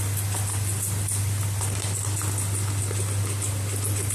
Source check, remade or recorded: recorded